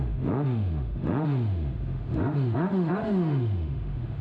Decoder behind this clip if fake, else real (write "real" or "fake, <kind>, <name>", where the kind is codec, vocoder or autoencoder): fake, autoencoder, DAC-VAE